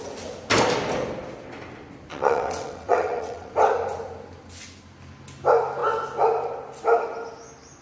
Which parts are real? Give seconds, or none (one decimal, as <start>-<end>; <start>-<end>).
0.0-2.1; 3.5-7.8